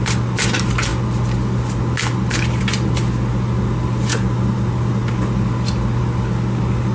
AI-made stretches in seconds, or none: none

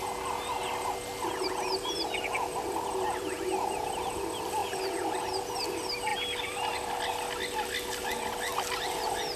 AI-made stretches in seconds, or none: 4.6-5.3 (vocoder, BigVGAN v2); 6.1-7.0

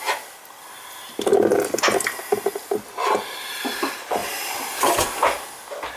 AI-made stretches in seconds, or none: 4.2-4.8 (vocoder, BigVGAN v2)

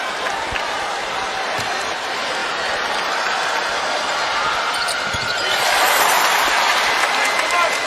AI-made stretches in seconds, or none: none